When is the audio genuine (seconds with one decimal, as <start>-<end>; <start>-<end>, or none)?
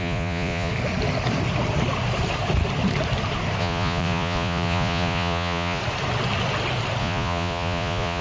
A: 0.7-3.6; 5.8-7.0